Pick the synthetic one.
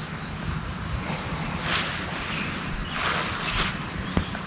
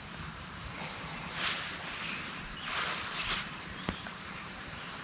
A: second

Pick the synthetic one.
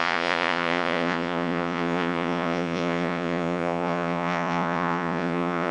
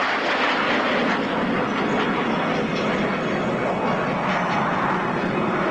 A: first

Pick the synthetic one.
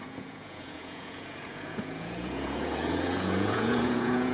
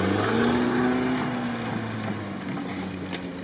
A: first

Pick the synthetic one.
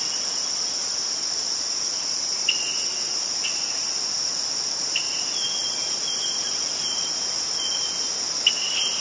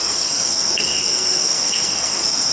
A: second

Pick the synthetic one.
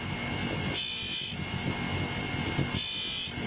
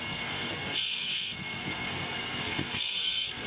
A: second